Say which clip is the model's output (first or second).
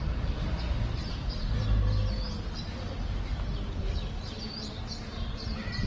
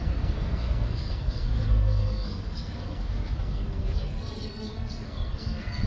second